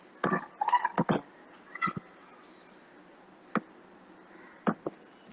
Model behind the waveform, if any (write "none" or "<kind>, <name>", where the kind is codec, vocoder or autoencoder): none